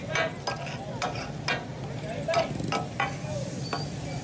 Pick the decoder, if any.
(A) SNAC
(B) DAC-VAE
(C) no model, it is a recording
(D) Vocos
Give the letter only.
C